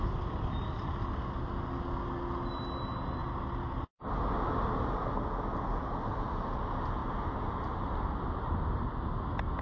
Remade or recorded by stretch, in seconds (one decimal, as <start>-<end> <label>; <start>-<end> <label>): 0.0-9.6 recorded